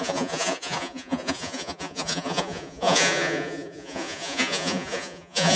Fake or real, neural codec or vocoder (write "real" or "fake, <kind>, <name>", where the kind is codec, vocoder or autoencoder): fake, vocoder, Vocos